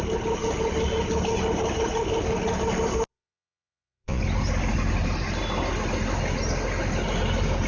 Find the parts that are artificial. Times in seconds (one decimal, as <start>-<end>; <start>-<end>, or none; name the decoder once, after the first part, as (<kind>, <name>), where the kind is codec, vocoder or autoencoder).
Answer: 3.1-4.2 (vocoder, Vocos)